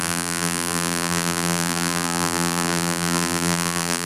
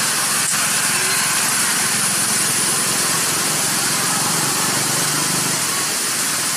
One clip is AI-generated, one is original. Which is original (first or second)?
second